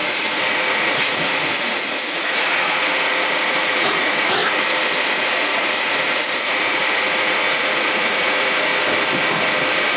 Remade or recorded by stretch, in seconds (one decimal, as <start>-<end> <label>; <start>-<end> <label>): 0.0-4.4 remade; 4.4-5.0 recorded; 5.0-8.7 remade; 8.7-10.0 recorded